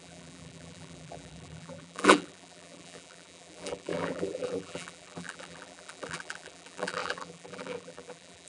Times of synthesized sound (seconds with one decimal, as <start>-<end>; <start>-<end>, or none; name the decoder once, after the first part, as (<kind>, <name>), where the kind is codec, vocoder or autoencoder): 0.0-8.5 (vocoder, BigVGAN v2)